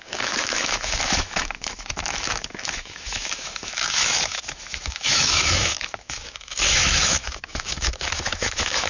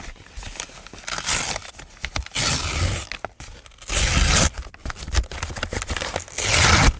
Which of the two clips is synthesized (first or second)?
first